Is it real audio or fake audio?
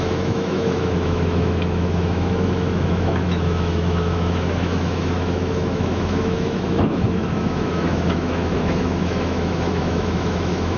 fake